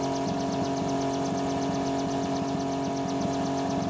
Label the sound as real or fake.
real